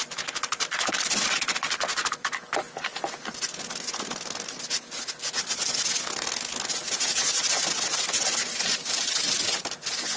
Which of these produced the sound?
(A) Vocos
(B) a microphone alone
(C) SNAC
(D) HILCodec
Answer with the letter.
B